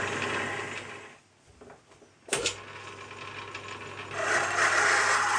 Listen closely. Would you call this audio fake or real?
real